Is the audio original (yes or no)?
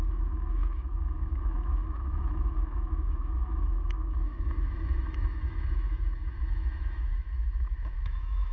no